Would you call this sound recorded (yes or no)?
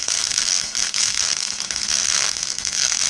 no